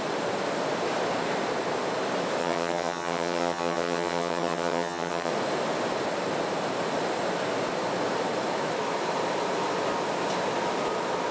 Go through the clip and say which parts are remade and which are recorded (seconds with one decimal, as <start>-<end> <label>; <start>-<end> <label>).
0.0-2.4 recorded; 2.4-5.3 remade; 5.3-11.3 recorded